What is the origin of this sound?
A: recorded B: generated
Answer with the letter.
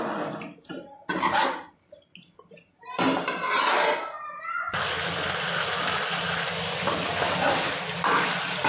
A